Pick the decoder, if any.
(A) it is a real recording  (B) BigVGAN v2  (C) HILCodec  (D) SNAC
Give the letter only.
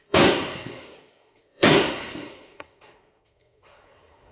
D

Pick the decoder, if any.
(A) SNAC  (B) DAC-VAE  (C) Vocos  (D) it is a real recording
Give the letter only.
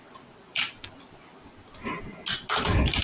D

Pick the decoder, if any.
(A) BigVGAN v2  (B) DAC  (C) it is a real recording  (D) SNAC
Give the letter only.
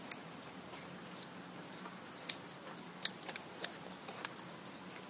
C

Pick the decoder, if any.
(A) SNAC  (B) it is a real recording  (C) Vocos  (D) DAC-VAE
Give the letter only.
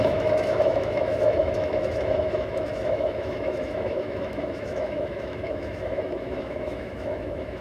D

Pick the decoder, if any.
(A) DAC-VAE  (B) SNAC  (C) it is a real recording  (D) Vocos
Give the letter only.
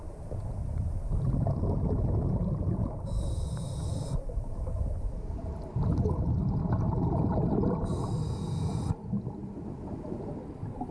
C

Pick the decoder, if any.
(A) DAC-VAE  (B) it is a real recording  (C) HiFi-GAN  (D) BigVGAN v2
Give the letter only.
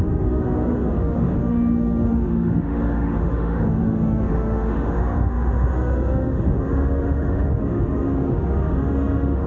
A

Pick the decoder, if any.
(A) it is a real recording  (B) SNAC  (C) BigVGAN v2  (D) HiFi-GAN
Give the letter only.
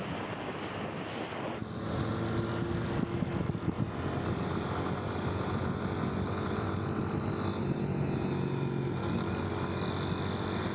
A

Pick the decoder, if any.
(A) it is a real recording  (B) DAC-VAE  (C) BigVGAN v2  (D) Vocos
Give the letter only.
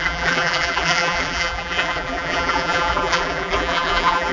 C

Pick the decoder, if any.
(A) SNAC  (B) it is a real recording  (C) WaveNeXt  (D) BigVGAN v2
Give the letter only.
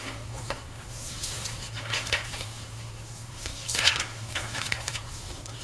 A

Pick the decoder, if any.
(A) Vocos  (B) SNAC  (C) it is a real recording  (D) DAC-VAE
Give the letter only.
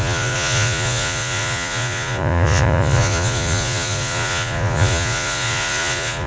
A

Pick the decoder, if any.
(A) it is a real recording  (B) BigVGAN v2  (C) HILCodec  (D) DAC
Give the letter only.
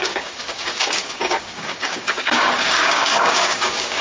D